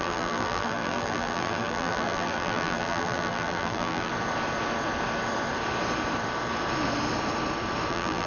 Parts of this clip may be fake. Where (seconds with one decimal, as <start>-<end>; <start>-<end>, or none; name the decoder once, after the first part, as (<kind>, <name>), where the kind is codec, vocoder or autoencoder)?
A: 0.0-4.1 (vocoder, BigVGAN v2); 7.9-8.3